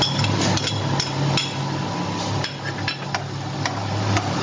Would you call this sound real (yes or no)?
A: yes